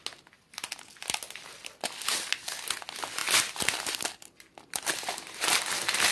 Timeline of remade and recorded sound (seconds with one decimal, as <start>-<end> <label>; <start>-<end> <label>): 0.0-6.1 recorded